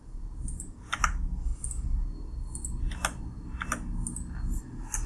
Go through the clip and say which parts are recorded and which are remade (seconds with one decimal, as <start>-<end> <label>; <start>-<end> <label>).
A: 0.0-5.1 recorded